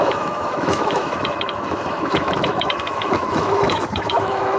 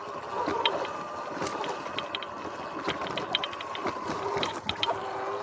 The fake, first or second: first